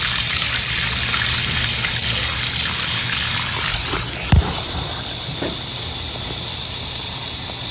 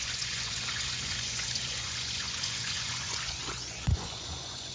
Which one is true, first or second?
first